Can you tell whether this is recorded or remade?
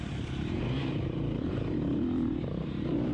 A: remade